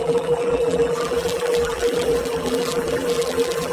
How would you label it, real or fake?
fake